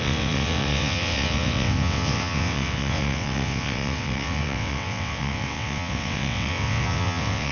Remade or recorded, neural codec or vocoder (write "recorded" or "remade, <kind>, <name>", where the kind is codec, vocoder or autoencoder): remade, vocoder, WaveNeXt